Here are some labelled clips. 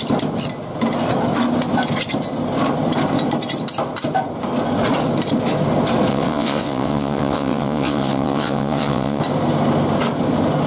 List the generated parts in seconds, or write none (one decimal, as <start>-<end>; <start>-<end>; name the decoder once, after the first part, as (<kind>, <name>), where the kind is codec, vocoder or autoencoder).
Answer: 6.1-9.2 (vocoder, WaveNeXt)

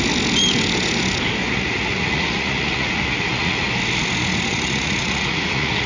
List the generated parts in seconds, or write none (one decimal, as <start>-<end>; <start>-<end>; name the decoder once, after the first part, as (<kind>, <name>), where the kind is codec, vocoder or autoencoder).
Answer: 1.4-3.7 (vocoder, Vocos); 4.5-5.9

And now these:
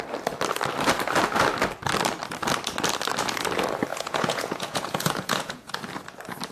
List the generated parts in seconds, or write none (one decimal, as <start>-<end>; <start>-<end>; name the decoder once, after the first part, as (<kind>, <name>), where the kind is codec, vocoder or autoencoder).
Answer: 3.9-5.7 (vocoder, Vocos)